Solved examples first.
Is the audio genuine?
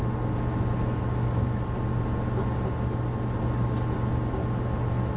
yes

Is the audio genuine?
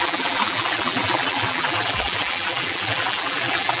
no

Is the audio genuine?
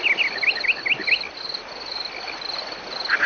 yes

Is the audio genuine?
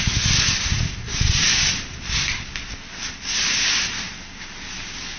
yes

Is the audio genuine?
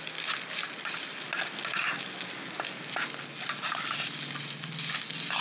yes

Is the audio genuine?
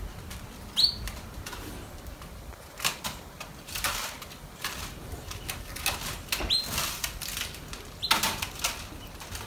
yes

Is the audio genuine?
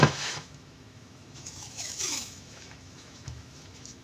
no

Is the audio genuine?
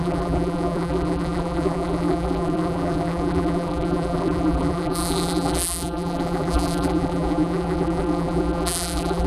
no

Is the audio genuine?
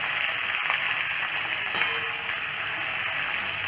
yes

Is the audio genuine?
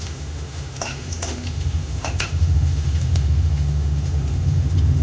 no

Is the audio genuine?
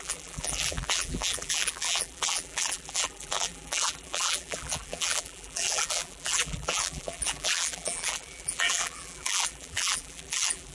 no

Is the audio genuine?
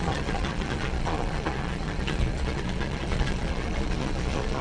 no